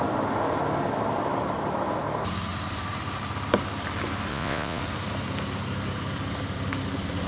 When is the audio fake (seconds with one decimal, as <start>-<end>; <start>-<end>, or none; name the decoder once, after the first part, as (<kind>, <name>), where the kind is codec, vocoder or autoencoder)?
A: 4.3-4.8 (vocoder, Vocos)